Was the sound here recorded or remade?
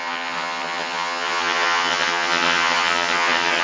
remade